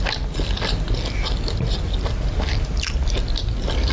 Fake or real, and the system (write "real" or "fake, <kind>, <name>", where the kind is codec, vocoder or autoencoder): real